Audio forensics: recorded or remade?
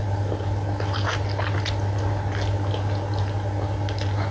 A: recorded